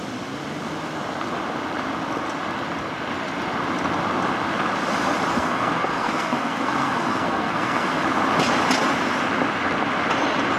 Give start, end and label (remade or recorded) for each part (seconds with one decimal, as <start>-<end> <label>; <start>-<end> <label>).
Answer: 0.0-5.3 recorded; 5.3-8.0 remade; 8.0-10.6 recorded